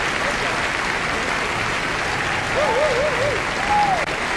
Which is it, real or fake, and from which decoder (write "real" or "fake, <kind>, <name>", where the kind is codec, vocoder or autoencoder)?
real